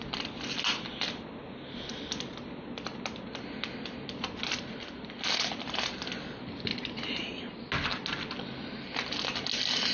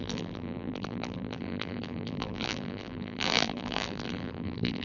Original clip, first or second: first